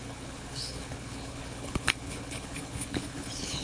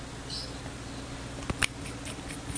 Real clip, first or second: second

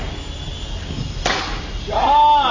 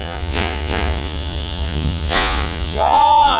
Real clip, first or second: first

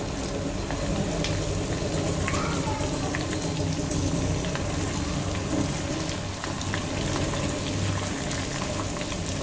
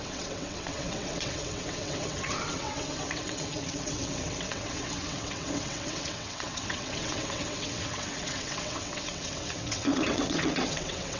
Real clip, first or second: first